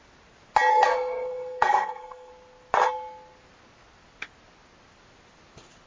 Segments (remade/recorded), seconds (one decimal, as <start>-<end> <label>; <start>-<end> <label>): 0.0-0.7 recorded; 0.7-2.3 remade; 2.3-5.9 recorded